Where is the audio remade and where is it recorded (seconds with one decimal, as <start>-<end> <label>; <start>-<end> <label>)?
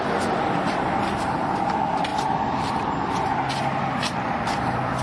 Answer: 0.0-5.0 recorded